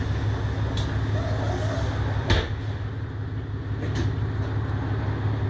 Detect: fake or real real